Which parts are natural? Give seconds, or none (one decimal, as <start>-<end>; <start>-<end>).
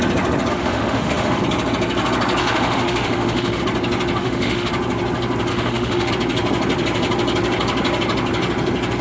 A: 0.0-0.5; 1.4-2.4; 3.6-4.2; 4.7-5.5; 6.1-9.0